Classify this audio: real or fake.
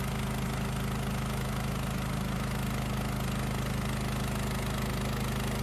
real